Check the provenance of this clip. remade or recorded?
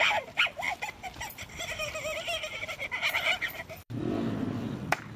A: remade